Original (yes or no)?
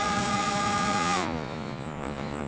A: no